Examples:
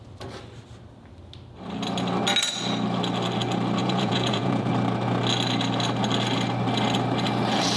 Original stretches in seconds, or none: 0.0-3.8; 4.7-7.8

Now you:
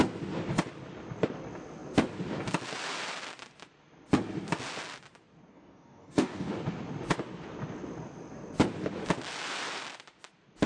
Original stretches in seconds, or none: 0.0-5.5; 6.5-10.7